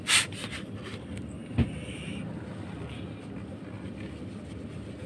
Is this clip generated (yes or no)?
no